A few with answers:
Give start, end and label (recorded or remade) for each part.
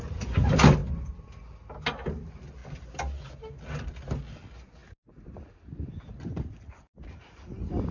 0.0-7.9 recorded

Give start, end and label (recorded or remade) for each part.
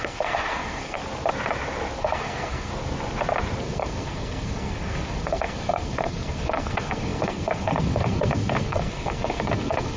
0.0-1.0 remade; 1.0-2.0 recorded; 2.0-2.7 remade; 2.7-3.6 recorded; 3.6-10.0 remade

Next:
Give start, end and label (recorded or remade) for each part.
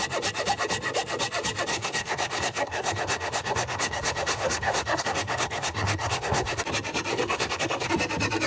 0.0-1.7 recorded; 1.7-6.6 remade; 6.6-7.1 recorded; 7.1-7.9 remade; 7.9-8.5 recorded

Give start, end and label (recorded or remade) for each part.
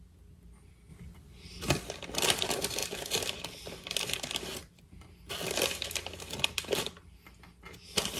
0.0-8.2 recorded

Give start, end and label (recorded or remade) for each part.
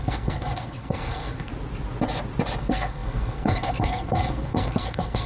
0.0-1.5 remade; 1.5-2.6 recorded; 2.6-5.3 remade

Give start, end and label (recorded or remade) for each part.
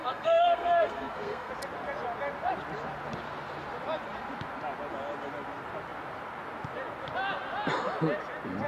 0.0-1.5 remade; 1.5-8.7 recorded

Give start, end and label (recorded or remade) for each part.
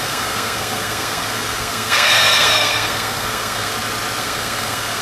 0.0-3.7 remade; 3.7-4.2 recorded; 4.2-5.0 remade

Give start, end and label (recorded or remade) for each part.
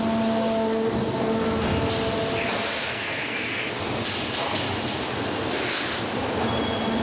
0.0-2.9 recorded; 2.9-3.7 remade; 3.7-7.0 recorded